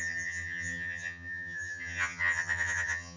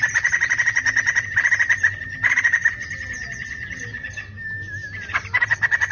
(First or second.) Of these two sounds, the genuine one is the second